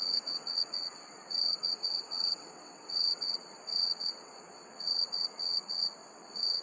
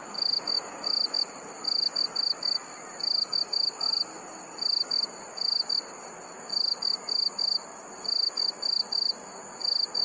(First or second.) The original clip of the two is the second